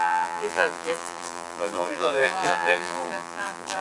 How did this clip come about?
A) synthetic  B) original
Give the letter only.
A